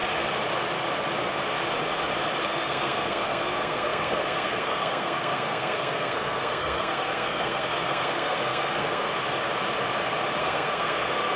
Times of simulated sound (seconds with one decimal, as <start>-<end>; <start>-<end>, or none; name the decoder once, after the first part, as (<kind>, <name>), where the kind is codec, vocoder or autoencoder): 2.4-9.1 (codec, SNAC); 10.4-11.4